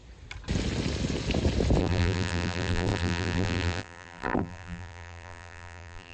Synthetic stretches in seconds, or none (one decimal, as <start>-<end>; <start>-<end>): 1.8-6.1